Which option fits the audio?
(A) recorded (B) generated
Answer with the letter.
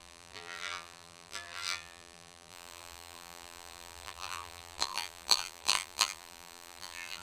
B